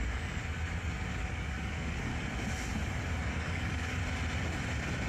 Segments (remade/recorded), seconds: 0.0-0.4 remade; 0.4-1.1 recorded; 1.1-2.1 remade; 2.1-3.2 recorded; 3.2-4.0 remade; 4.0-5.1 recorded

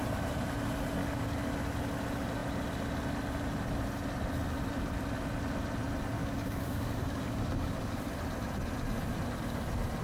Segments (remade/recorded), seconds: 0.0-1.0 recorded; 1.0-1.5 remade; 1.5-6.2 recorded; 6.2-8.0 remade; 8.0-10.0 recorded

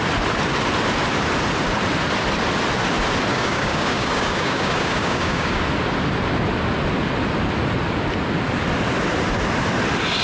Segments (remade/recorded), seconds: 0.0-3.3 recorded; 3.3-5.6 remade; 5.6-10.2 recorded

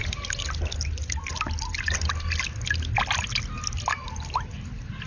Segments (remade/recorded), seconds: 0.0-5.1 recorded

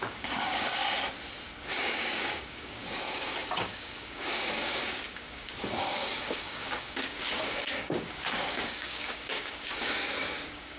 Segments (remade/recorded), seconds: 0.0-0.8 remade; 0.8-1.7 recorded; 1.7-10.8 remade